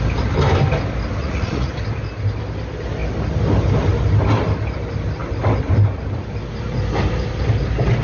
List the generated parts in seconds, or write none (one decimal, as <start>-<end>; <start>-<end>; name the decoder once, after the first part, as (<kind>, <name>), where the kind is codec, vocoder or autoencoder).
1.2-1.7 (vocoder, Vocos)